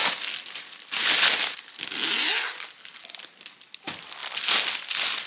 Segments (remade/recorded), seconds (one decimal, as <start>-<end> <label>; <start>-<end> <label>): 0.0-5.3 recorded